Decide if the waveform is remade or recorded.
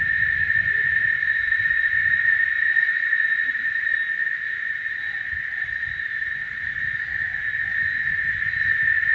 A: recorded